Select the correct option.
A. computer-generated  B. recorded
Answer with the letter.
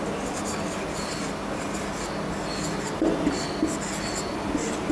B